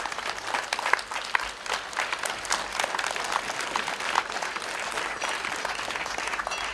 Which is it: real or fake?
real